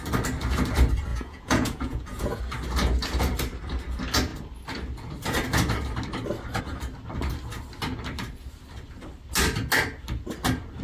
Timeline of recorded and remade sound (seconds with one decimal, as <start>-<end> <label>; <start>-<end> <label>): 0.0-1.1 recorded; 1.1-2.4 remade; 2.4-10.8 recorded